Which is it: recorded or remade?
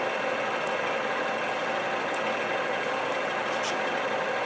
recorded